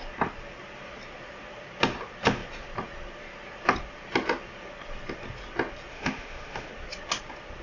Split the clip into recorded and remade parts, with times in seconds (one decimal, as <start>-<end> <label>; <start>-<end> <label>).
0.0-5.9 recorded; 5.9-6.7 remade; 6.7-7.6 recorded